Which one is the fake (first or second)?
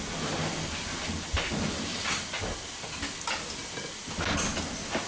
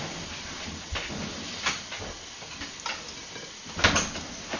second